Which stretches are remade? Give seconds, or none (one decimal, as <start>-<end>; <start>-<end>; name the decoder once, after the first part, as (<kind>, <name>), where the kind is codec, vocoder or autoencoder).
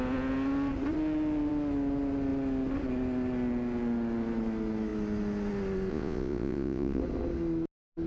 5.9-7.0 (vocoder, Vocos)